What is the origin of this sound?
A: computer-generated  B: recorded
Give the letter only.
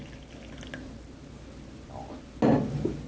B